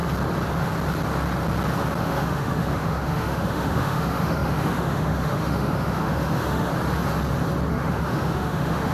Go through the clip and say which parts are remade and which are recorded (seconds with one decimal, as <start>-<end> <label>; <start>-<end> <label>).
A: 0.0-2.0 recorded; 2.0-6.7 remade; 6.7-7.7 recorded; 7.7-8.9 remade